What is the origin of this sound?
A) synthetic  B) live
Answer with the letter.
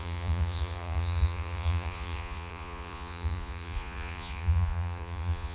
A